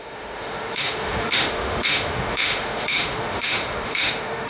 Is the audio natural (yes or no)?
no